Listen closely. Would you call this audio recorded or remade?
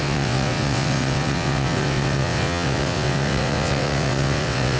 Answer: remade